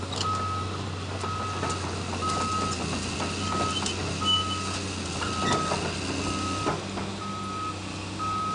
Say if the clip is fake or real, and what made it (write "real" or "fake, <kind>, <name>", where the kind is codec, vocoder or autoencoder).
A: real